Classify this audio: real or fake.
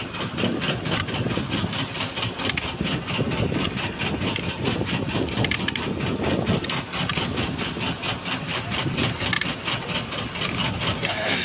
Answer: real